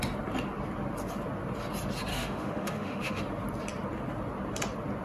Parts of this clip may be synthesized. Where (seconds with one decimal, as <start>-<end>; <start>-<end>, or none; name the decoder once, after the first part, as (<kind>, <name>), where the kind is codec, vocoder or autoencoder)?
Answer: 2.1-3.2 (autoencoder, DAC-VAE)